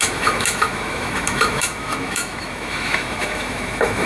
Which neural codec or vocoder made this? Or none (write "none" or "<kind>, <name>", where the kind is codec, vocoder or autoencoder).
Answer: autoencoder, DAC-VAE